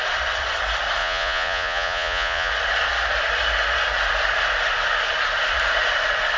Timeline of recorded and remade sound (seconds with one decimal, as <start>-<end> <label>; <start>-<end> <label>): 0.0-1.0 recorded; 1.0-2.5 remade; 2.5-6.4 recorded